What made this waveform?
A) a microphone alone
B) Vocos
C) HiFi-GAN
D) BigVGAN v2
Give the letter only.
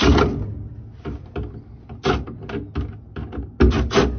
A